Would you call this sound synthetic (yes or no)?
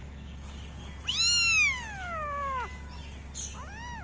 no